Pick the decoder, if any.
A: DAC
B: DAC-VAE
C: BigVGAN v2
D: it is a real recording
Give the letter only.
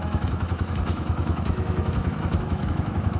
B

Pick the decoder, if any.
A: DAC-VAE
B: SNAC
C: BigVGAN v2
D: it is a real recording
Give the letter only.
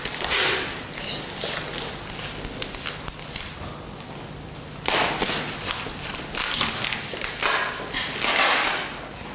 D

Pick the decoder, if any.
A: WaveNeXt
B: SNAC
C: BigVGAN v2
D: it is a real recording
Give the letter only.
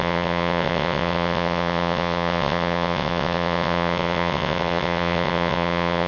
A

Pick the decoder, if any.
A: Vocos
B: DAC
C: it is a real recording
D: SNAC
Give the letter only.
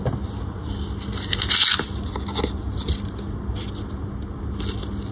C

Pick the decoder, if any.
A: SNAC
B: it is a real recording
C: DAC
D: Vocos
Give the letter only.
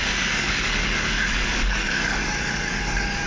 C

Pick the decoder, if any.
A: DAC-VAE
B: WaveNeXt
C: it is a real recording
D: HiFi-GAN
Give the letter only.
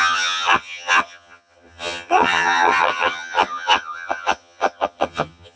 D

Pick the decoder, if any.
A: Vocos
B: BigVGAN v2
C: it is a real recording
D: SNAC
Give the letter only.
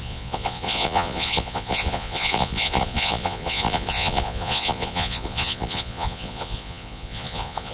A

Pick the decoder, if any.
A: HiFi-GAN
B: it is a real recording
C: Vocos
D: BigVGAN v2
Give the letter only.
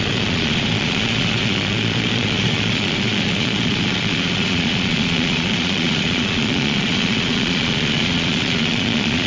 C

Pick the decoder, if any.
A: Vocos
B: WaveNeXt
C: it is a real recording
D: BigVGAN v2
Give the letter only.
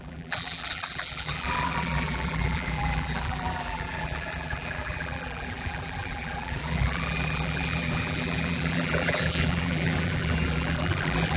D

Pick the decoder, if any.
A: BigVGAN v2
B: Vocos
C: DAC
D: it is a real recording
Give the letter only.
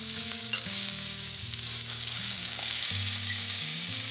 C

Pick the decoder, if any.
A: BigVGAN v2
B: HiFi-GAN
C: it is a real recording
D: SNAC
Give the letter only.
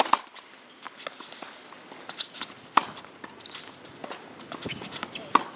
C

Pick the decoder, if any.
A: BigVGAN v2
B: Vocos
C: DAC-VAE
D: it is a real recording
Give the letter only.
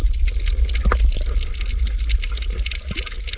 D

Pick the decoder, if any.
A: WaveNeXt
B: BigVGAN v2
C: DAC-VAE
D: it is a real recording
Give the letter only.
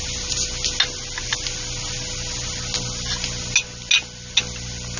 D